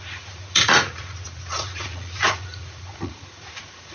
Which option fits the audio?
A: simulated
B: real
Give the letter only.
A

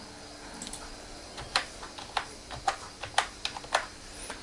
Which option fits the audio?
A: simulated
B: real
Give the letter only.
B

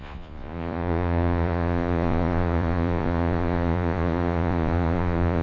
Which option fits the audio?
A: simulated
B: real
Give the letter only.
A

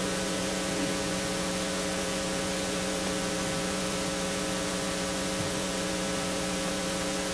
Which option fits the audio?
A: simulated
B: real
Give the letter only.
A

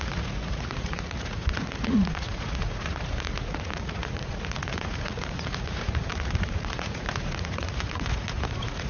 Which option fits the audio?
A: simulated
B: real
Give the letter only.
A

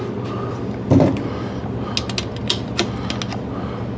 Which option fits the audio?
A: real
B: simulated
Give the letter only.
A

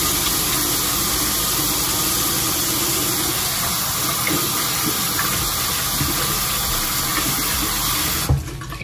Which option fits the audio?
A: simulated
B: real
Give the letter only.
B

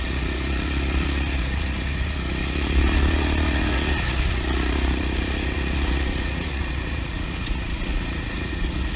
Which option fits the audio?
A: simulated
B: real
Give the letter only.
A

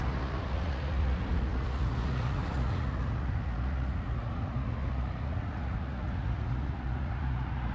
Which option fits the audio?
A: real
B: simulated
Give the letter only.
B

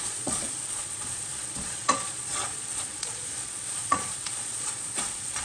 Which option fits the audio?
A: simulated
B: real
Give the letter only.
A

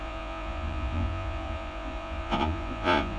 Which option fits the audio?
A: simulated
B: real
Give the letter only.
A